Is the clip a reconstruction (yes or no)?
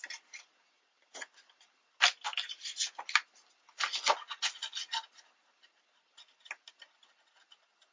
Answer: no